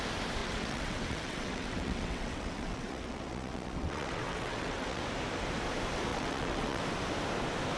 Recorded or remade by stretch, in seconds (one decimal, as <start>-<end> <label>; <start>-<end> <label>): 0.0-0.4 recorded; 0.4-5.0 remade; 5.0-6.1 recorded; 6.1-6.8 remade; 6.8-7.8 recorded